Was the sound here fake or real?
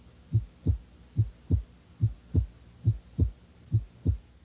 real